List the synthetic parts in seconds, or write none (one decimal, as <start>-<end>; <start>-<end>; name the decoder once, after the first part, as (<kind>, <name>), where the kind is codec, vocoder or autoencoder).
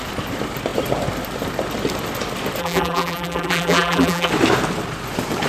2.6-4.3 (vocoder, BigVGAN v2)